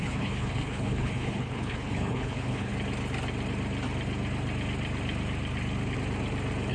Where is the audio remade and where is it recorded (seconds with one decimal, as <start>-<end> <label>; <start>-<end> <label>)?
0.0-2.7 remade; 2.7-6.7 recorded